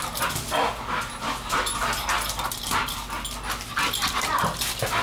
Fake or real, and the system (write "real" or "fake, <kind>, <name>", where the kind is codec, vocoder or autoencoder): real